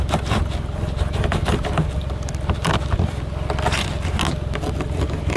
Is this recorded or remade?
recorded